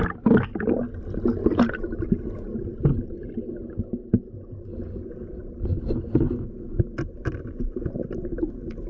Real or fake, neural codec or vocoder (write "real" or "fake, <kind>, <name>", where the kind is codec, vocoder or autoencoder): real